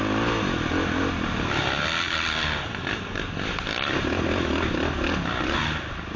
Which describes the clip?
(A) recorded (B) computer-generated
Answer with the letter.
A